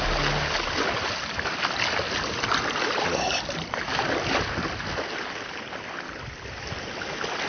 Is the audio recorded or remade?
recorded